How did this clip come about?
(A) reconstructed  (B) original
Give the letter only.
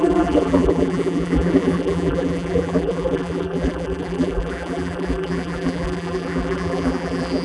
A